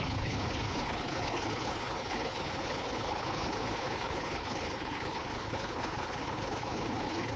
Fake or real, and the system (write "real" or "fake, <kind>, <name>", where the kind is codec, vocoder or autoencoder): fake, codec, HILCodec